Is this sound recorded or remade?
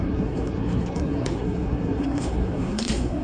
remade